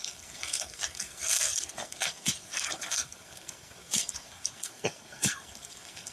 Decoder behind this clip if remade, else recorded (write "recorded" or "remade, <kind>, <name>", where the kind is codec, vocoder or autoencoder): remade, codec, SNAC